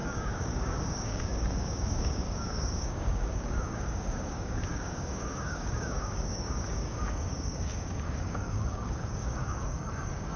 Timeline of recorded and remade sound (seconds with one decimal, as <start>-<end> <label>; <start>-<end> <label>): 0.0-10.4 remade